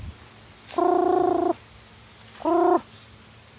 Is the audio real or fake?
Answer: real